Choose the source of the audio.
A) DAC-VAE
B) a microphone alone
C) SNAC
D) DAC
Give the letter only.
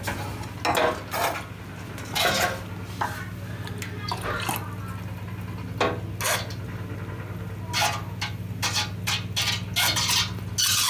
B